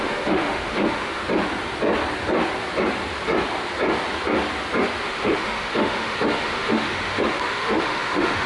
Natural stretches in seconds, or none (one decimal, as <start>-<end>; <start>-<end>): 1.2-5.0